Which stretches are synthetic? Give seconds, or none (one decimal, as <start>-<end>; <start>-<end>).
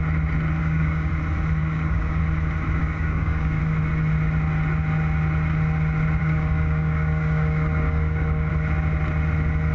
0.6-1.1; 1.6-2.2; 2.8-3.6; 6.2-8.5